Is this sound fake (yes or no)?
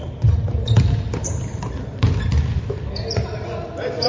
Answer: no